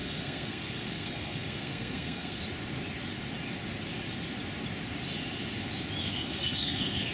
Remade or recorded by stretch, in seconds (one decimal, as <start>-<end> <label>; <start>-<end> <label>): 0.0-2.4 remade; 2.4-6.0 recorded; 6.0-7.1 remade